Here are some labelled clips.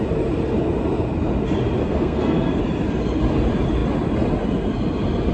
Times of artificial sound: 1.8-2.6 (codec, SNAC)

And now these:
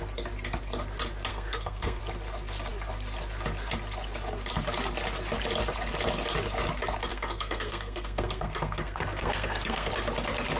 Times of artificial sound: 1.3-2.0 (codec, SNAC); 7.1-9.9

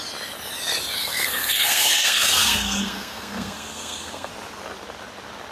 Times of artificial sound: 1.0-4.3 (codec, SNAC)